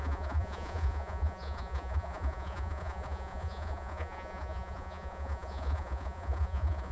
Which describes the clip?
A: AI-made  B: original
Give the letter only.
A